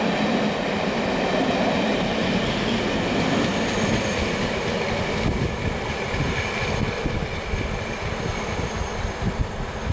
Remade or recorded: recorded